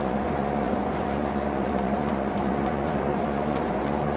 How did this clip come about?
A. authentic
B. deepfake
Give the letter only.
B